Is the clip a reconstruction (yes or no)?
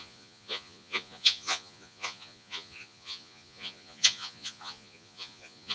yes